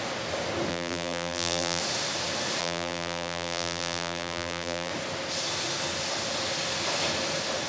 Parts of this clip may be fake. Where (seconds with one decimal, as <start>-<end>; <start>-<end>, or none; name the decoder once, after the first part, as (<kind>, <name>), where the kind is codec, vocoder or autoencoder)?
0.7-1.8 (vocoder, BigVGAN v2); 2.6-4.9